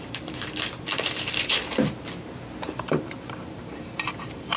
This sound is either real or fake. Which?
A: fake